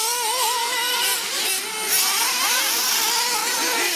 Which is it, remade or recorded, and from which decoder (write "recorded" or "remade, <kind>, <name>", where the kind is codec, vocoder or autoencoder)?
recorded